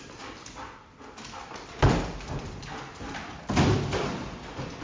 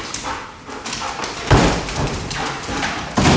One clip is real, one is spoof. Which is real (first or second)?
first